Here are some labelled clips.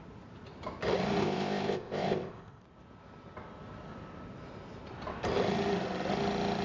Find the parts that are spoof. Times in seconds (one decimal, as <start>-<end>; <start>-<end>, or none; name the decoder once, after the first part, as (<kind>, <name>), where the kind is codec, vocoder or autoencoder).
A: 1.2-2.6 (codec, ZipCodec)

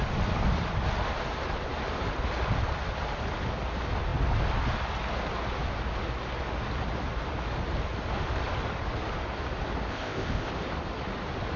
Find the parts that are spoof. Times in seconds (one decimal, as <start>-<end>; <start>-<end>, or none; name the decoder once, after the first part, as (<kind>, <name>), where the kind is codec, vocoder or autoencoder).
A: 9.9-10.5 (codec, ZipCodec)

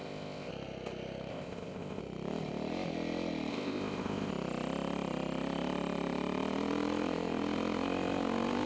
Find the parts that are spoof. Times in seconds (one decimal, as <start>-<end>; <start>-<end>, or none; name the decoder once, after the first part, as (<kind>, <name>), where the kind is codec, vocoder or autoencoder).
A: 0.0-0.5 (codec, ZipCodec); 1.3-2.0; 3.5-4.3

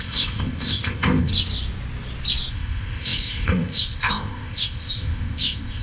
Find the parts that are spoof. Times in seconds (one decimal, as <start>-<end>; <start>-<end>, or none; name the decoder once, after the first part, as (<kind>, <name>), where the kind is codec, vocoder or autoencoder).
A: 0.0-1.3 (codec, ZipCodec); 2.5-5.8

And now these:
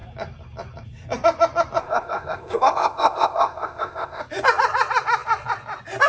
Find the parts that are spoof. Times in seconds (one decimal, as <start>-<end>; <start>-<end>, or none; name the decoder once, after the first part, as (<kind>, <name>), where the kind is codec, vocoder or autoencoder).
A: 1.8-4.2 (codec, ZipCodec)

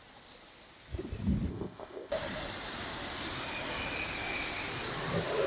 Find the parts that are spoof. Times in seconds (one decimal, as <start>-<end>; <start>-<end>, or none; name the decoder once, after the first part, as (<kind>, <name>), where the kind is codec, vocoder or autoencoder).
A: 1.5-2.1 (codec, ZipCodec)

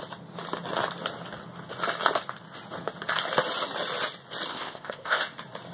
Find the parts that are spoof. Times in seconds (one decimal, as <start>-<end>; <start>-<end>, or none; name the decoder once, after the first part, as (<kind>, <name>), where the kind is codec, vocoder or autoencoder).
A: 4.5-5.2 (codec, ZipCodec)

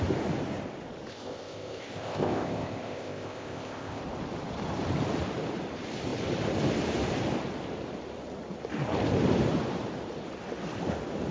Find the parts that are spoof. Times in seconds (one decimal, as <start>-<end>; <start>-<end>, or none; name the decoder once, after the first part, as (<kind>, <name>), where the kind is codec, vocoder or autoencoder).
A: 1.1-4.0 (codec, ZipCodec)